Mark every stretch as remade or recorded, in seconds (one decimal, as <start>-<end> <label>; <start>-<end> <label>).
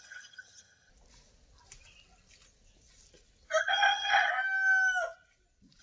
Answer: 0.0-0.9 remade; 0.9-3.6 recorded; 3.6-4.3 remade; 4.3-5.8 recorded